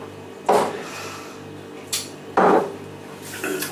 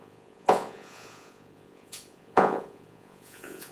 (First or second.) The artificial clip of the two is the second